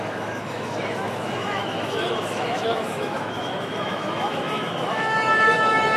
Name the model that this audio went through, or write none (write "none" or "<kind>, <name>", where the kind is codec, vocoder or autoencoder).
autoencoder, DAC-VAE